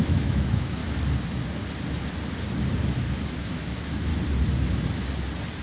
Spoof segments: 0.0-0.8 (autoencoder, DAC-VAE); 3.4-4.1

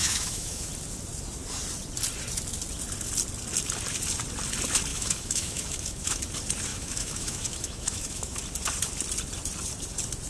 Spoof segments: 0.0-0.7 (autoencoder, DAC-VAE); 4.9-6.2; 6.7-8.4

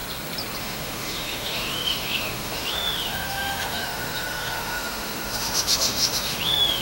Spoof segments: 0.6-6.8 (autoencoder, DAC-VAE)

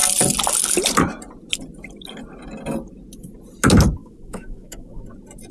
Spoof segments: 4.0-5.0 (autoencoder, DAC-VAE)

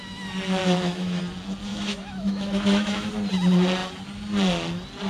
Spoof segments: 0.6-1.2 (autoencoder, DAC-VAE); 1.7-3.1

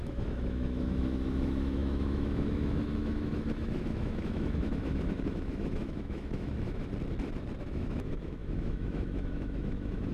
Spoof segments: 0.0-6.9 (autoencoder, DAC-VAE); 7.6-10.1

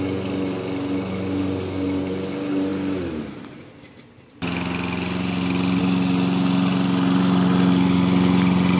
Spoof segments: none

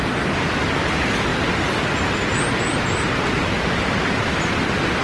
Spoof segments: none